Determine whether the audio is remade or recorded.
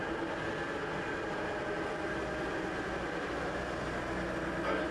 recorded